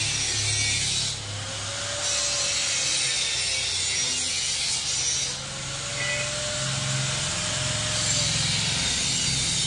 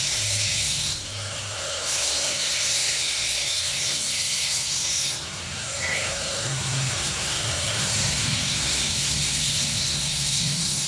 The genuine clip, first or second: first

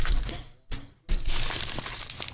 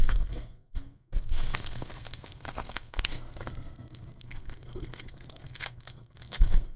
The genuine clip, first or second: first